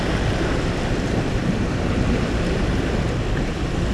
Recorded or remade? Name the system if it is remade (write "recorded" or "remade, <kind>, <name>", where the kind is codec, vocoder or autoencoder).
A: recorded